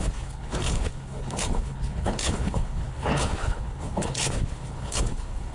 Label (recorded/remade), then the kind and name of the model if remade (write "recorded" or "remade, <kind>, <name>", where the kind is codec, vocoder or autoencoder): remade, codec, HILCodec